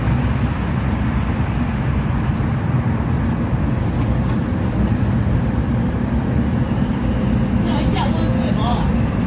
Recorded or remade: recorded